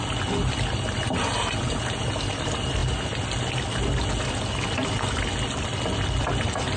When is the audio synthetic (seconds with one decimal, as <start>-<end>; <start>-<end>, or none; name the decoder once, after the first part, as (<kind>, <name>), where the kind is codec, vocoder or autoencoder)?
none